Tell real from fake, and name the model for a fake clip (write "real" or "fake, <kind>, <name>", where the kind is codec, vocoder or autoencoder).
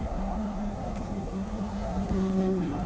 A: fake, codec, SNAC